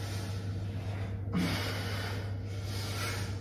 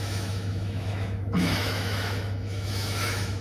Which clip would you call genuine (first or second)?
first